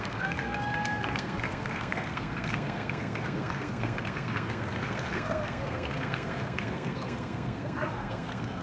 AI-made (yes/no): yes